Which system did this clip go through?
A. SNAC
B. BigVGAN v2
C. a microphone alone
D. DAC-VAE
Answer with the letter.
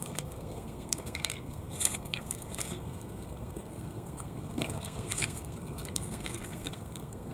A